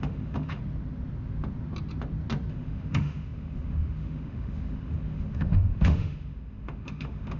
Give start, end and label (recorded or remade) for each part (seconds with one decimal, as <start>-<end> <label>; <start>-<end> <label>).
0.0-0.6 remade; 0.6-2.5 recorded; 2.5-7.4 remade